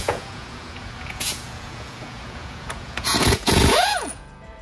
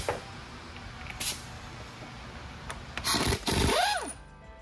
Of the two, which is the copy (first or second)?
first